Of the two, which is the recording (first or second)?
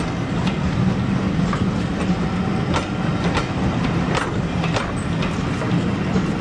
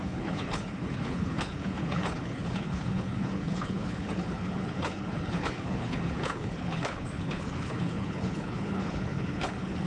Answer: first